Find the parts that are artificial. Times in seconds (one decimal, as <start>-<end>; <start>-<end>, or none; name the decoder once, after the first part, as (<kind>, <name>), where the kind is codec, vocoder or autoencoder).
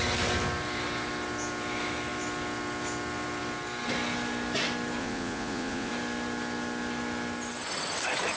5.0-5.9 (vocoder, Vocos)